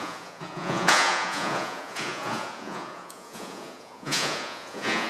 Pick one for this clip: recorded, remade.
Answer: remade